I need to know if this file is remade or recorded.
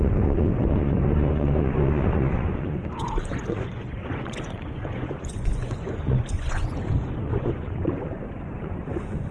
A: remade